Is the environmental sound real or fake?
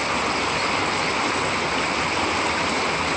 real